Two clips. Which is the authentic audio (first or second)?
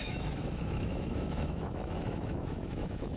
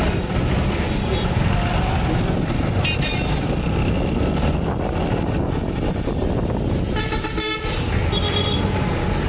second